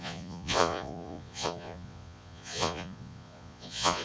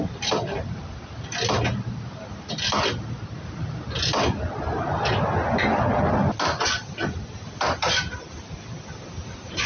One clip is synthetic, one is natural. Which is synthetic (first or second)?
first